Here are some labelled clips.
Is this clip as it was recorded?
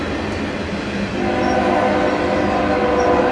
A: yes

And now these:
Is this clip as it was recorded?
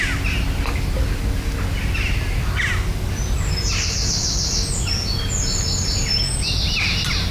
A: yes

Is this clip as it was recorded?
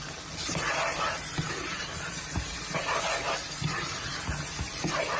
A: yes